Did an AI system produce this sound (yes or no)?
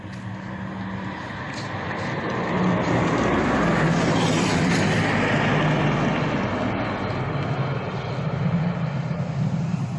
no